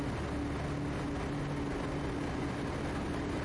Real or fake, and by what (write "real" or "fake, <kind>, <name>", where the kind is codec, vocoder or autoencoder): real